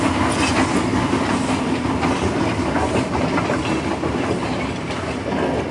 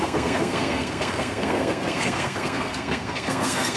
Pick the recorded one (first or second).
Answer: first